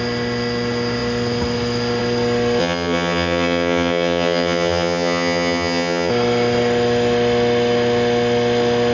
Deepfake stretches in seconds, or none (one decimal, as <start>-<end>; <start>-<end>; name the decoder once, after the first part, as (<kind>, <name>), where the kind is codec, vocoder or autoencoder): 2.6-6.1 (vocoder, HiFi-GAN)